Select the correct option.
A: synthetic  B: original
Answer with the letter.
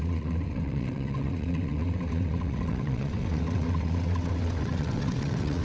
A